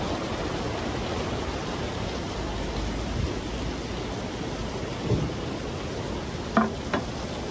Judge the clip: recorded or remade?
recorded